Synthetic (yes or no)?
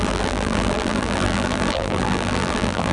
yes